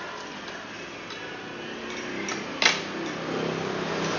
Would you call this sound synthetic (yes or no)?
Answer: no